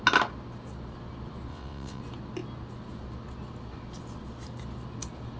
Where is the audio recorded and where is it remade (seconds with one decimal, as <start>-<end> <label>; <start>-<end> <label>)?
0.0-1.5 recorded; 1.5-2.0 remade; 2.0-5.4 recorded